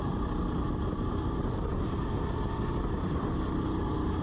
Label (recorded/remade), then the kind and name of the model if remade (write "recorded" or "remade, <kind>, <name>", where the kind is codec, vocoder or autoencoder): recorded